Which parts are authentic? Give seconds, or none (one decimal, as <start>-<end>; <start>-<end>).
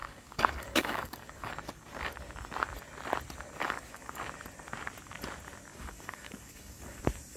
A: 1.5-3.6; 4.2-5.7; 7.0-7.4